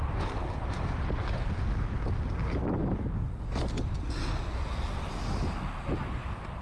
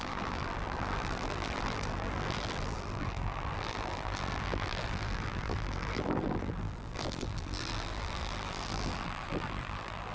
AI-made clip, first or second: second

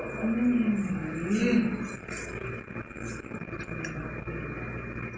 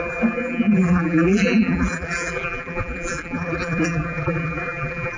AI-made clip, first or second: second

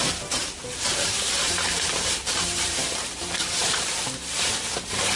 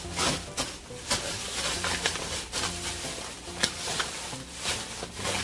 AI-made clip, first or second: first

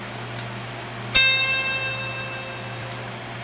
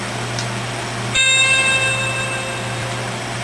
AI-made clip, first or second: second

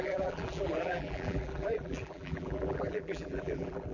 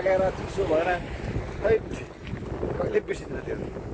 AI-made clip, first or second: first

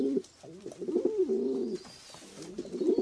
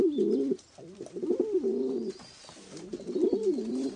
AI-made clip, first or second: second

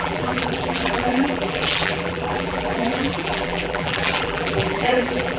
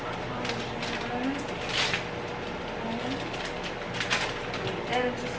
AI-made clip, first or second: first